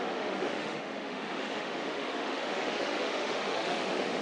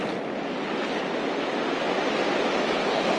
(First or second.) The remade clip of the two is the first